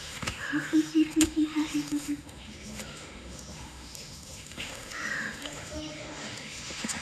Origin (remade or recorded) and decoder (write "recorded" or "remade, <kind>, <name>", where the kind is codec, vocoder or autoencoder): remade, autoencoder, DAC-VAE